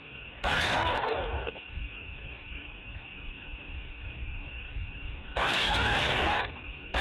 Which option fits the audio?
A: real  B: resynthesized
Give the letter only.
B